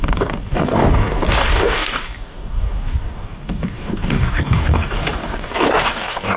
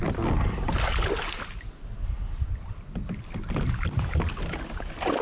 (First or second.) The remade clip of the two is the first